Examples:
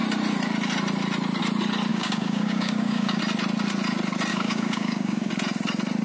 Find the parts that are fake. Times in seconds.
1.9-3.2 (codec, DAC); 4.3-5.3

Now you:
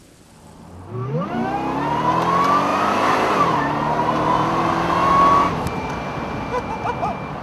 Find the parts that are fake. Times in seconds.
2.7-5.1 (vocoder, BigVGAN v2)

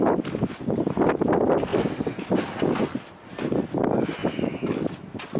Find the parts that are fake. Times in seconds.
none

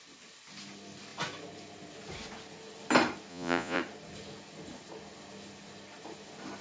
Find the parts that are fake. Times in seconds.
3.3-3.8 (vocoder, Vocos)

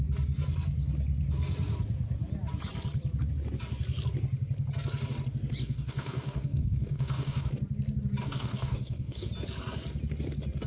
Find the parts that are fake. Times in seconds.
5.6-7.5 (codec, DAC); 8.2-9.3

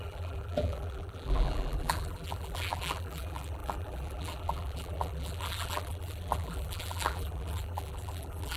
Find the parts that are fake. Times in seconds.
0.0-8.6 (vocoder, BigVGAN v2)

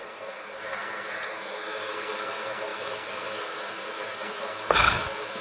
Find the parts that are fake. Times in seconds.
0.0-5.4 (codec, SNAC)